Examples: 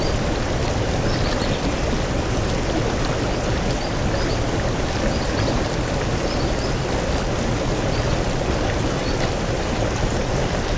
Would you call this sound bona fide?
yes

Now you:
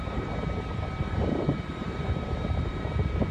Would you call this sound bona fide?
no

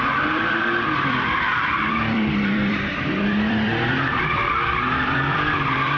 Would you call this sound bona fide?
no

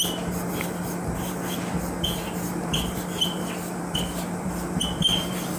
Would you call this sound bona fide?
no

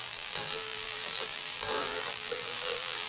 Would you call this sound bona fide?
no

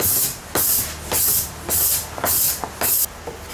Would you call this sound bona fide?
yes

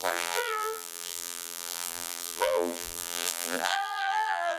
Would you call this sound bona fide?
no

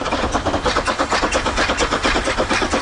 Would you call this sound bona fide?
yes